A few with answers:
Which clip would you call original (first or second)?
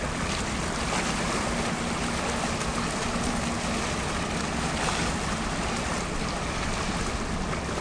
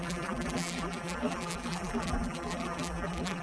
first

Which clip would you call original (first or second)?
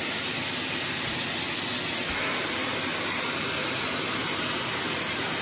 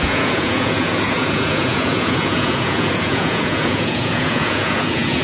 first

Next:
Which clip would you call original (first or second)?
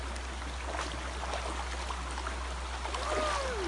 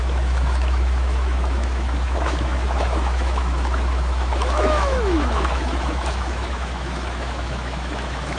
first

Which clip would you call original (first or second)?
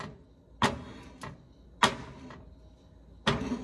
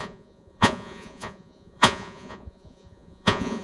first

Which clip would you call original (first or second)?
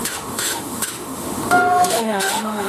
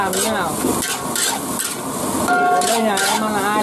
second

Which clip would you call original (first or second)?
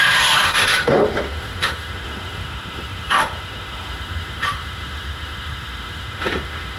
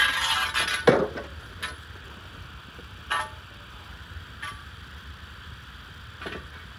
second